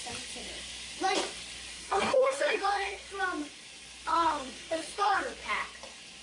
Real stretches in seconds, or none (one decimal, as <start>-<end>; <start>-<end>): 0.0-1.7; 3.1-4.1; 5.2-6.2